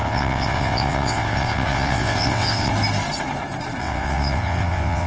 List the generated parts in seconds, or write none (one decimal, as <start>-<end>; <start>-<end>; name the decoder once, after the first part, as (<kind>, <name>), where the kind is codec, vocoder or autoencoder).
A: 0.0-2.7 (vocoder, WaveNeXt); 3.8-5.1